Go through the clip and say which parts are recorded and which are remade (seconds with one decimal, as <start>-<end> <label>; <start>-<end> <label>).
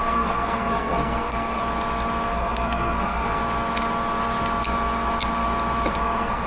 0.0-1.6 remade; 1.6-2.3 recorded; 2.3-3.4 remade; 3.4-5.9 recorded; 5.9-6.5 remade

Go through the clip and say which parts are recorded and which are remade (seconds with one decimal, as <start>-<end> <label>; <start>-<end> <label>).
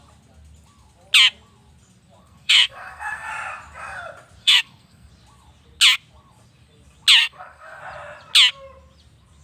0.0-2.2 recorded; 2.2-3.3 remade; 3.3-4.4 recorded; 4.4-5.1 remade; 5.1-7.2 recorded; 7.2-7.8 remade; 7.8-9.4 recorded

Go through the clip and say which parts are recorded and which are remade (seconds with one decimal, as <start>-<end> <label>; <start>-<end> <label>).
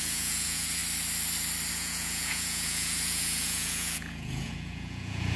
0.0-0.8 remade; 0.8-1.7 recorded; 1.7-5.4 remade